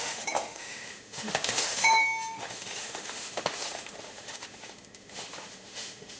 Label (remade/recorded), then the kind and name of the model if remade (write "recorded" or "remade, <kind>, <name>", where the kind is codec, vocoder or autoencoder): remade, autoencoder, DAC-VAE